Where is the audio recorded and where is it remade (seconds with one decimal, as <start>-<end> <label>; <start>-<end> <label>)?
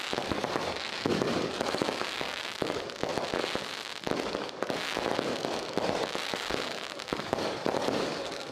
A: 0.0-3.1 remade; 3.1-4.2 recorded; 4.2-8.5 remade